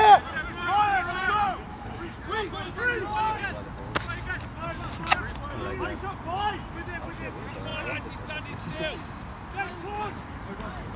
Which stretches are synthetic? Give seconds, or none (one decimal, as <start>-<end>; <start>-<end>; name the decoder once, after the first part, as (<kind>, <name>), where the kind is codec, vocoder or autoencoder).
1.7-2.2 (autoencoder, DAC-VAE)